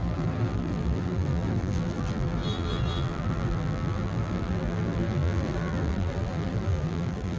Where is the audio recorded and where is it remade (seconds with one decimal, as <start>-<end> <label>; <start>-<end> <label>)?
0.0-7.4 remade